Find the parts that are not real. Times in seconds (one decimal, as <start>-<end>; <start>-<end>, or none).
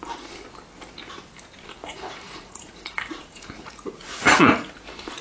1.8-4.7